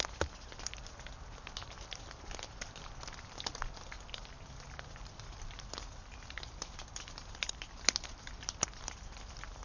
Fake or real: real